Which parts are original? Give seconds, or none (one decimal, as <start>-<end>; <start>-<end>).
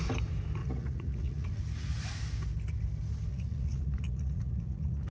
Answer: 0.0-0.6; 1.6-3.3